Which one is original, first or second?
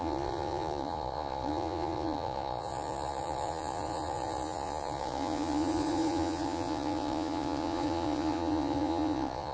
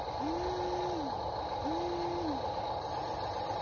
second